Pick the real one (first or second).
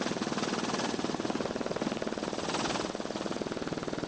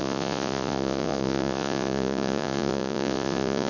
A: first